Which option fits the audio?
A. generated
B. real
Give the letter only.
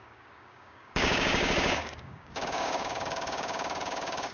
A